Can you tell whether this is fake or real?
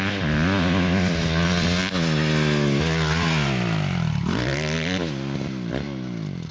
real